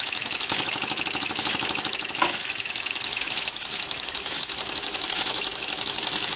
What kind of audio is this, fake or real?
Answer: fake